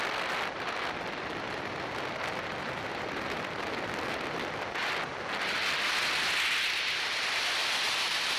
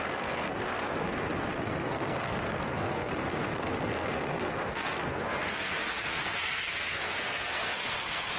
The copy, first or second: second